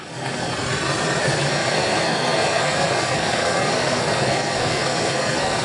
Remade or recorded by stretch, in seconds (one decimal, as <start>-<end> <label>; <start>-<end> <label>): 0.0-0.5 remade; 0.5-1.2 recorded; 1.2-5.6 remade